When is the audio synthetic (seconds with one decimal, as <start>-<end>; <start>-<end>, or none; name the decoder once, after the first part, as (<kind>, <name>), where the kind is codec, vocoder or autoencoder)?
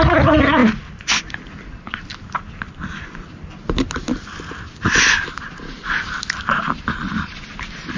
none